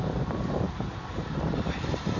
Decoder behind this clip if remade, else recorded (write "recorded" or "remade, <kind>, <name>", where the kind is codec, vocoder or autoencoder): remade, vocoder, BigVGAN v2